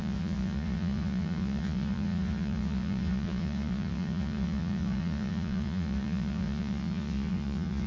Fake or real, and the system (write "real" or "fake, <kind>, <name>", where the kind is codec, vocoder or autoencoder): fake, vocoder, Vocos